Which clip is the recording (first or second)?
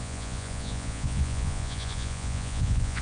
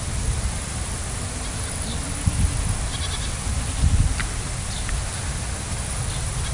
second